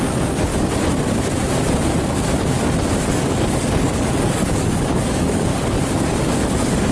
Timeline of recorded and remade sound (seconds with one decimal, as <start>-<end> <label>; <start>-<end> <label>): 0.0-0.5 remade; 0.5-3.1 recorded; 3.1-5.5 remade; 5.5-6.9 recorded